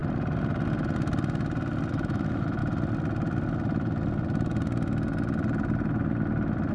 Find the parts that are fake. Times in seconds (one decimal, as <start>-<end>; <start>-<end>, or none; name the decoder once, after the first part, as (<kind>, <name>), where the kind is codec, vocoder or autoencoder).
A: 1.9-2.6 (autoencoder, DAC-VAE)